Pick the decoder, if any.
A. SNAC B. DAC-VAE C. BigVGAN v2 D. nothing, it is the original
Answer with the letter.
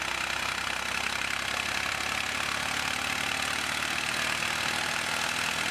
D